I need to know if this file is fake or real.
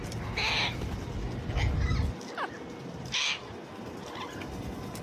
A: real